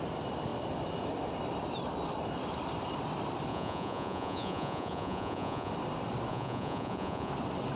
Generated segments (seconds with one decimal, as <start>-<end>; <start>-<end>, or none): 3.5-5.7; 6.3-7.3